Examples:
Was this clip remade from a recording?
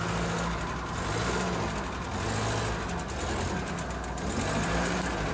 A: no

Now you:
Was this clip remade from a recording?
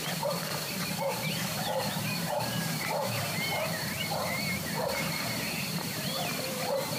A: yes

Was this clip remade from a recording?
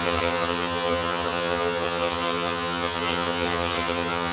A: yes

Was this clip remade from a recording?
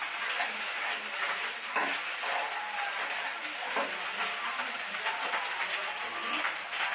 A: no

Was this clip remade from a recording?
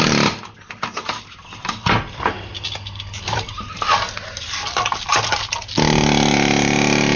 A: no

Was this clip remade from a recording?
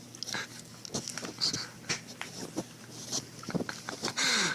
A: no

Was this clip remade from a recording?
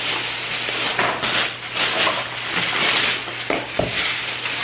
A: no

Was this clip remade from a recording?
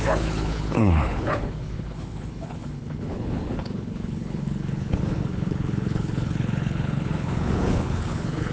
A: yes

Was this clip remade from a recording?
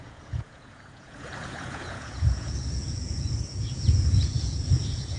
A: yes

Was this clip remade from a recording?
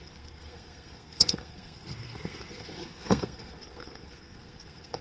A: yes